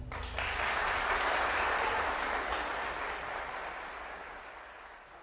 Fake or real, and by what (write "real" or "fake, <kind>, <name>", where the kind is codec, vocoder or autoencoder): real